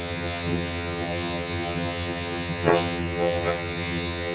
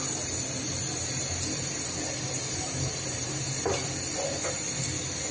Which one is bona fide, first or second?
second